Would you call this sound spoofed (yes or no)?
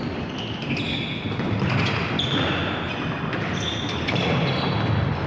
no